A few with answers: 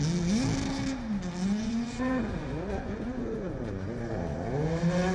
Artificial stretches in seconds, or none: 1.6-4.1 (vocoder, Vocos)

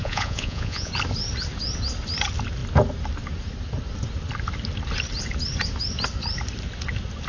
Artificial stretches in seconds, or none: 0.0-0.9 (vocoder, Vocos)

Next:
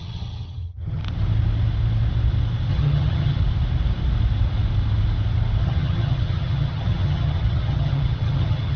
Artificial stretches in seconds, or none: 0.0-1.0 (vocoder, HiFi-GAN); 2.7-3.4; 5.6-8.8

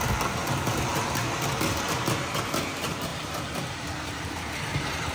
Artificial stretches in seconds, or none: 3.1-5.1 (vocoder, BigVGAN v2)

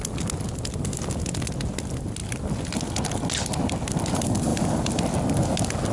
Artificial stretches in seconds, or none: none

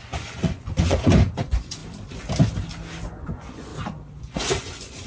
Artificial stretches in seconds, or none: 0.0-1.8 (vocoder, Vocos); 3.2-3.7; 4.2-5.1

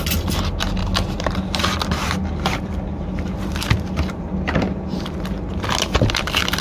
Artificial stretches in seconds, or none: none

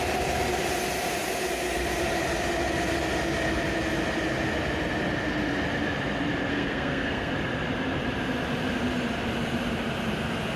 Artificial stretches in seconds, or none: 6.5-7.3 (codec, SNAC)